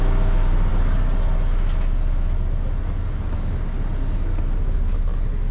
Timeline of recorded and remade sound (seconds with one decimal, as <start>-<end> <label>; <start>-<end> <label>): 0.0-5.5 recorded

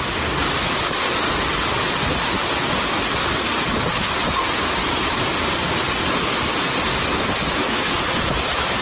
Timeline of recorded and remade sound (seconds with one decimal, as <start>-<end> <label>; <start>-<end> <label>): 0.0-6.9 recorded; 6.9-8.8 remade

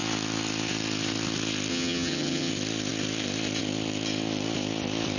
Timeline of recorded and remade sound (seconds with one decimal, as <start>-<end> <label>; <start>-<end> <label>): 0.0-1.7 recorded; 1.7-2.5 remade; 2.5-5.2 recorded

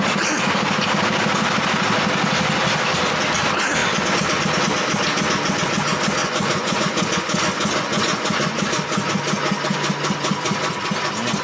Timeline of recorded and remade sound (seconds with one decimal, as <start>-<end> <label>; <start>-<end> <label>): 0.0-6.2 recorded; 6.2-8.6 remade; 8.6-11.4 recorded

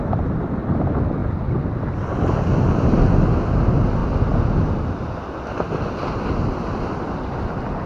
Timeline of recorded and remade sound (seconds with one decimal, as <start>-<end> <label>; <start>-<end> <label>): 0.0-7.9 recorded